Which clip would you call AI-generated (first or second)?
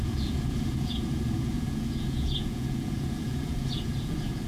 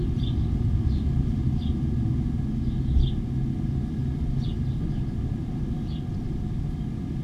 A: first